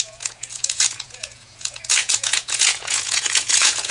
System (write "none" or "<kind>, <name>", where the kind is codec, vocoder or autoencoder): vocoder, Vocos